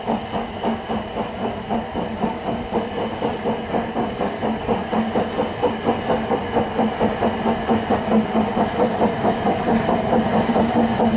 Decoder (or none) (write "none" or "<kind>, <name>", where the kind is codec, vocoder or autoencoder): none